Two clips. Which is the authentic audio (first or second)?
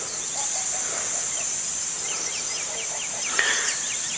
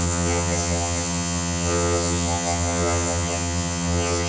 first